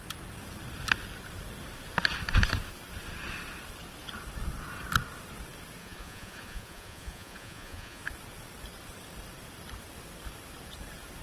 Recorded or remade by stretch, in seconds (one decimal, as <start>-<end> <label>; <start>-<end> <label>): 0.0-5.8 recorded; 5.8-8.0 remade; 8.0-11.2 recorded